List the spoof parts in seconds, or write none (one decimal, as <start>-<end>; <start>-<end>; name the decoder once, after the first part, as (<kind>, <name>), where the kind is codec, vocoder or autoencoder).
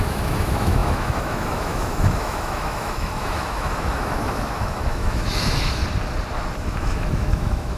0.0-5.8 (autoencoder, DAC-VAE); 6.6-7.8